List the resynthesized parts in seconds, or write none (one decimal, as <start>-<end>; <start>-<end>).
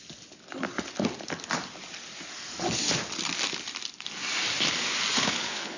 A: 5.1-5.8